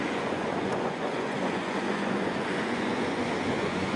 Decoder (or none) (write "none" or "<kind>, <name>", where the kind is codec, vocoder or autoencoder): vocoder, Vocos